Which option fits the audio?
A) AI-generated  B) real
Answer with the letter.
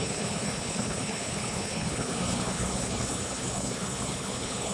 A